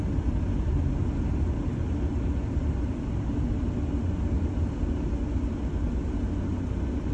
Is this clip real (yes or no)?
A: yes